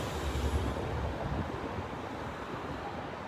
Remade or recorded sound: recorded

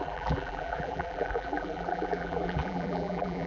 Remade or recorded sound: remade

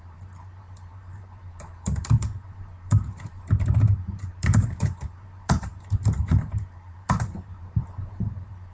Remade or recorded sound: remade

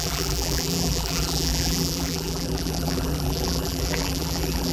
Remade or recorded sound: remade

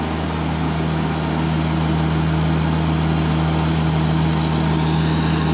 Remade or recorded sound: recorded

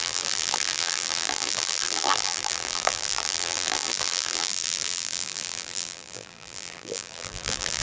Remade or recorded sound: remade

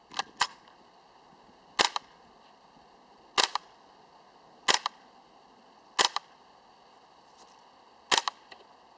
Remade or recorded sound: recorded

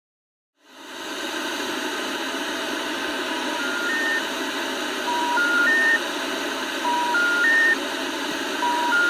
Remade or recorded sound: recorded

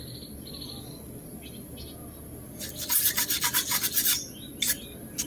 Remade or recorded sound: recorded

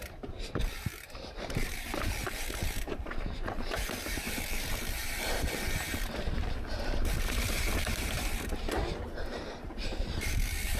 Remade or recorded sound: remade